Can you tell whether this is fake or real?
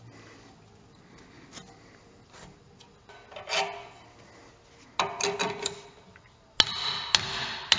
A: real